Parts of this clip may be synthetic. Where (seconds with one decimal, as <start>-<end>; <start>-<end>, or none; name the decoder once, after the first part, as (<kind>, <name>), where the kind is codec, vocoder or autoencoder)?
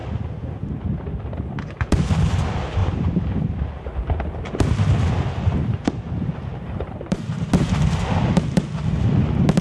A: 2.8-4.2 (vocoder, BigVGAN v2); 6.5-7.2